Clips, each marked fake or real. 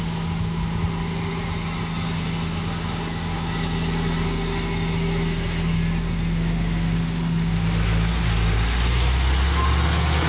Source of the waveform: real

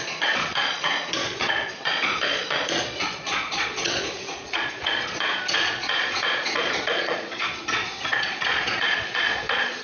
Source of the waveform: fake